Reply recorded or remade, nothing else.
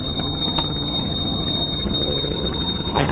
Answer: remade